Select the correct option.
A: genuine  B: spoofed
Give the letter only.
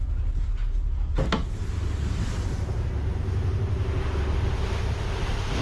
A